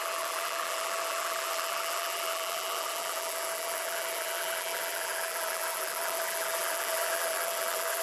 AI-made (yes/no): yes